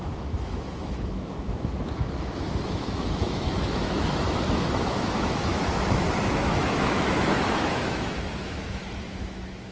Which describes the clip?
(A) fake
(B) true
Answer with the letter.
A